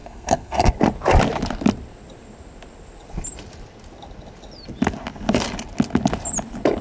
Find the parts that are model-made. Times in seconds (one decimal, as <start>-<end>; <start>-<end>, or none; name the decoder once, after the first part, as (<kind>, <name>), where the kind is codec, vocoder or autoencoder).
0.0-0.7 (codec, SNAC)